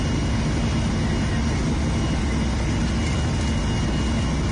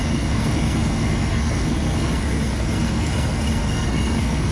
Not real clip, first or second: second